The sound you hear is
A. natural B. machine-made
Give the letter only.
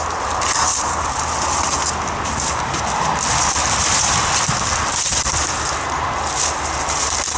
A